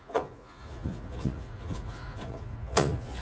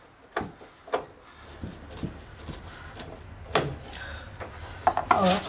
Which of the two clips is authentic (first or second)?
second